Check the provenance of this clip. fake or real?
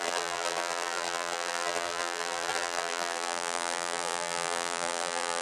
fake